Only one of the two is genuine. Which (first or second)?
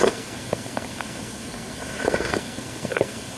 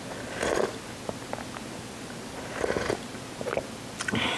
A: second